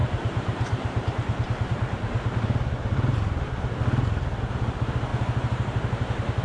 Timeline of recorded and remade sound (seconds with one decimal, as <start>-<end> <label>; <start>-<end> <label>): 0.0-3.8 remade; 3.8-5.1 recorded; 5.1-6.4 remade